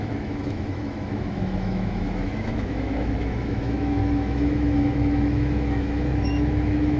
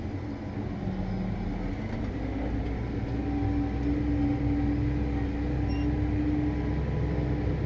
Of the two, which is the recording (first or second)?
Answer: second